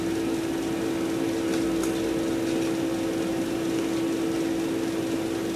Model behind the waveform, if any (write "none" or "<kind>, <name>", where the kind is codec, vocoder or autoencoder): none